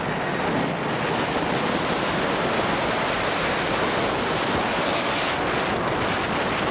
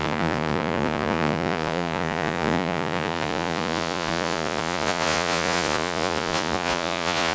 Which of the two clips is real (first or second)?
first